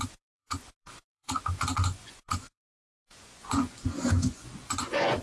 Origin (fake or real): fake